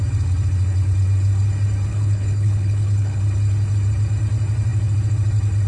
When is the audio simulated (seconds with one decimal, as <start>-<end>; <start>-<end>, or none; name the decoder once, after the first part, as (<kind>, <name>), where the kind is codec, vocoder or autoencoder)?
1.9-3.2 (codec, HILCodec)